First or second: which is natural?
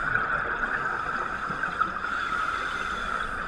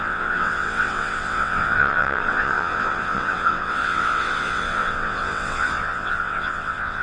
first